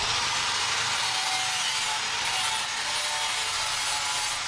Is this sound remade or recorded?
recorded